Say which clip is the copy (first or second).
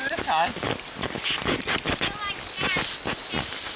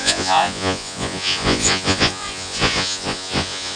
second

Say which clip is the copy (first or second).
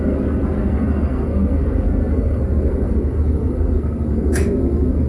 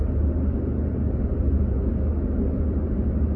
first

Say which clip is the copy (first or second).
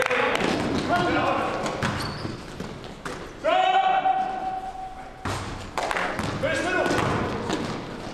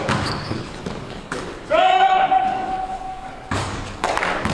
second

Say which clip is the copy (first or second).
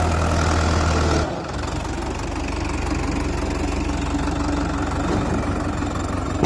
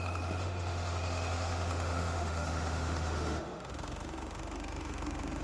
second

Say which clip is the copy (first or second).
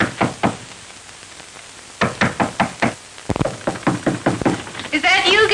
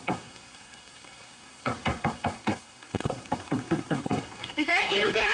second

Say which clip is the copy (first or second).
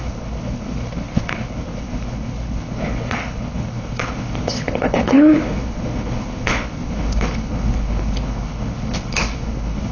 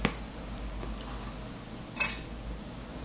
first